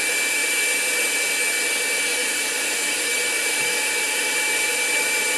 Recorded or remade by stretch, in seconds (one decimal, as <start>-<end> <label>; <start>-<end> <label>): 0.0-0.4 recorded; 0.4-1.3 remade; 1.3-2.1 recorded; 2.1-5.4 remade